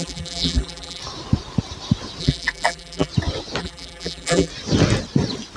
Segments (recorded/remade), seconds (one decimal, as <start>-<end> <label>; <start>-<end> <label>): 0.0-1.0 remade; 1.0-2.2 recorded; 2.2-3.1 remade; 3.1-3.6 recorded; 3.6-4.5 remade; 4.5-5.6 recorded

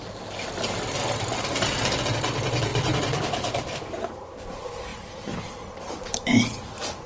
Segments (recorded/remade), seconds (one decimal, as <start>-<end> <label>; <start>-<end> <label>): 0.0-2.7 recorded; 2.7-4.1 remade; 4.1-7.1 recorded

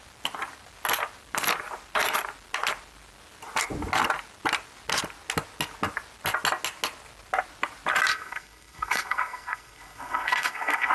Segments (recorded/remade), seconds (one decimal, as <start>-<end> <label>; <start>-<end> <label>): 0.0-8.1 recorded; 8.1-10.9 remade

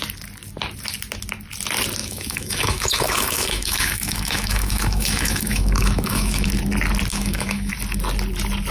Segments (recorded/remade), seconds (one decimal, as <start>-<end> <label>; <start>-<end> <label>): 0.0-2.0 recorded; 2.0-6.5 remade; 6.5-7.1 recorded; 7.1-7.7 remade; 7.7-8.7 recorded

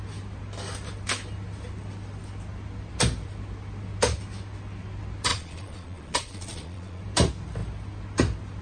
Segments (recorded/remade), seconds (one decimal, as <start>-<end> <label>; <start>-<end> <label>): 0.0-5.3 recorded; 5.3-7.0 remade; 7.0-8.6 recorded